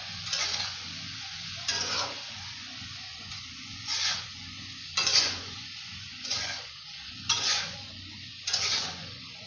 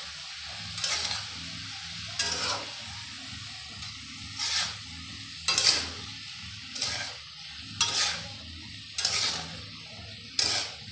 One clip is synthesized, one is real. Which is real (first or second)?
second